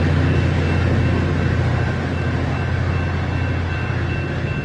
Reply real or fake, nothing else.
real